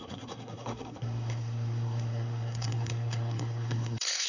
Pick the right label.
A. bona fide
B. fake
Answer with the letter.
B